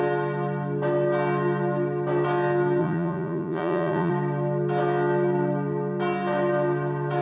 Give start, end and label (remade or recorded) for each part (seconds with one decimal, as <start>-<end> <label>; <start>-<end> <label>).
0.0-2.8 recorded; 2.8-4.1 remade; 4.1-7.2 recorded